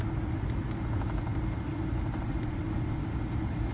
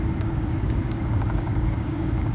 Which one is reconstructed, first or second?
second